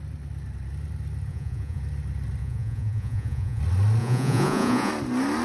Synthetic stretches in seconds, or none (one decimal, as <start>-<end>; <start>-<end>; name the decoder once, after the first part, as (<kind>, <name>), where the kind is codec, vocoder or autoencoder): 1.3-1.8 (vocoder, Vocos); 2.4-3.6; 4.0-4.9